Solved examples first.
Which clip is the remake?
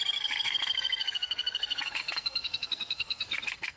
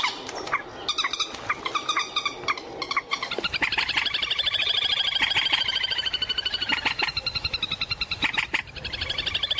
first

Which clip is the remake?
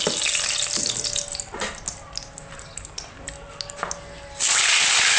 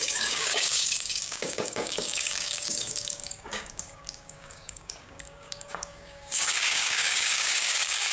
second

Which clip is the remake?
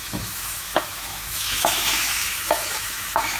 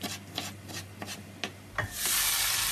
first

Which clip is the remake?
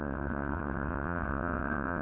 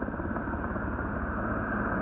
first